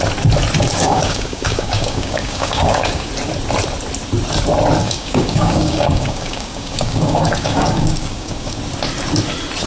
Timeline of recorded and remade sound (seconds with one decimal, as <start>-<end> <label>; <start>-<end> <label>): 0.0-0.7 recorded; 0.7-3.1 remade; 3.1-4.8 recorded; 4.8-8.6 remade; 8.6-9.7 recorded